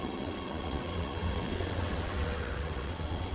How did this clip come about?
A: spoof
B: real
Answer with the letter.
A